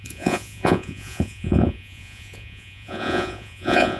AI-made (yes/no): yes